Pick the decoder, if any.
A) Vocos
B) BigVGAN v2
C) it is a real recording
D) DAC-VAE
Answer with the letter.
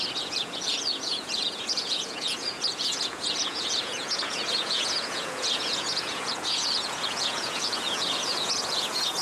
A